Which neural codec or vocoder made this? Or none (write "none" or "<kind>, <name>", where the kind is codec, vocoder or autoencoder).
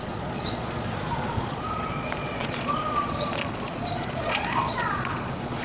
vocoder, Vocos